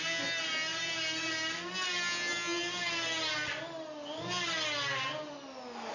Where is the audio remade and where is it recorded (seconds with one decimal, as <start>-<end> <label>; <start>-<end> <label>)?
0.0-5.9 recorded